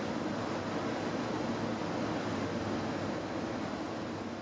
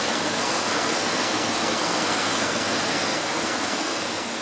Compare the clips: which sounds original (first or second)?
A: first